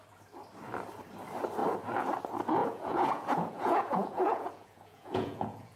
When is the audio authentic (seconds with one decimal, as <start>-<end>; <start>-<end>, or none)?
0.0-2.6